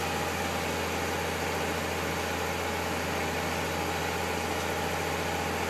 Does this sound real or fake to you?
real